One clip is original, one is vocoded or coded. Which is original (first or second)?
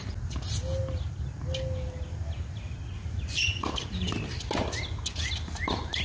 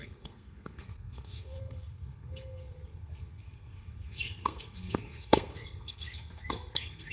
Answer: first